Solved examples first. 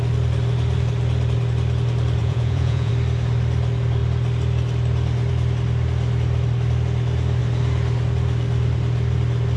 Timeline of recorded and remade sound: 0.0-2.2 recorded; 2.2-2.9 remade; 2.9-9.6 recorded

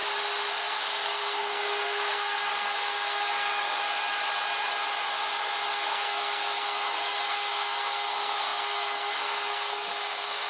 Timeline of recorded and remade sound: 0.0-0.5 recorded; 0.5-3.8 remade; 3.8-5.7 recorded; 5.7-10.5 remade

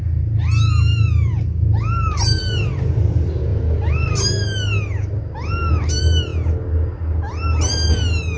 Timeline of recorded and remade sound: 0.0-8.4 recorded

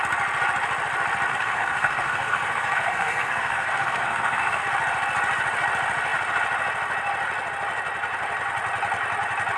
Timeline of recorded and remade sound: 0.0-1.3 recorded; 1.3-4.6 remade; 4.6-9.6 recorded

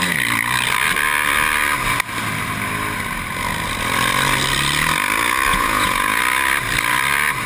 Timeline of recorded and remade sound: 0.0-5.5 recorded; 5.5-6.2 remade; 6.2-7.5 recorded

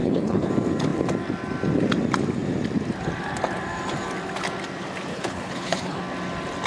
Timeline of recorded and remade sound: 0.0-0.5 remade; 0.5-5.1 recorded; 5.1-6.0 remade; 6.0-6.7 recorded